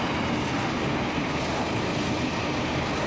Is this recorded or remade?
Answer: recorded